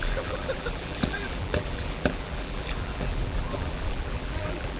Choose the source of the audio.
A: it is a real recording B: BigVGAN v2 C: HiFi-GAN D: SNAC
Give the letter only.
B